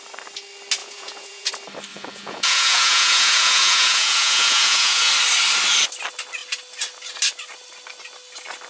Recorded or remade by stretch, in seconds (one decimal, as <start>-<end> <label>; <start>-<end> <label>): 0.0-0.8 recorded; 0.8-1.5 remade; 1.5-1.9 recorded; 1.9-5.1 remade; 5.1-8.7 recorded